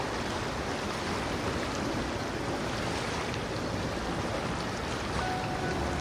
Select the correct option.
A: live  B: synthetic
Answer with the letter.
A